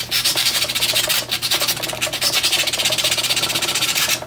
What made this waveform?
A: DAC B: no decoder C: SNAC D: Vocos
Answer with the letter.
B